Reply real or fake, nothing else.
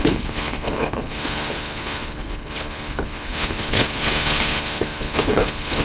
fake